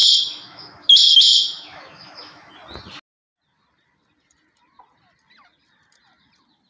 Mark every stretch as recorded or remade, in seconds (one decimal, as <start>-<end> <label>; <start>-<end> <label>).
0.0-2.5 remade; 2.5-6.7 recorded